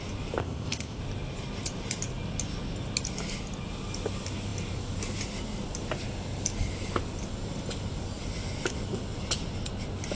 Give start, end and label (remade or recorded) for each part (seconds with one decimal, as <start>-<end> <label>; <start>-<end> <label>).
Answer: 0.0-0.4 recorded; 0.4-1.0 remade; 1.0-10.1 recorded